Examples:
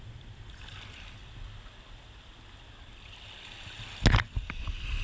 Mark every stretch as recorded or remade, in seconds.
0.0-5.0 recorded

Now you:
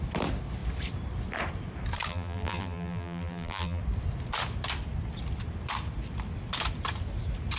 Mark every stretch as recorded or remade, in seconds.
0.0-2.1 recorded; 2.1-3.8 remade; 3.8-7.6 recorded

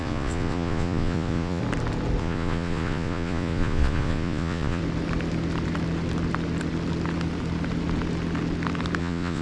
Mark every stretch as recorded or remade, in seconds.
0.0-1.6 remade; 1.6-2.2 recorded; 2.2-4.8 remade; 4.8-9.0 recorded; 9.0-9.4 remade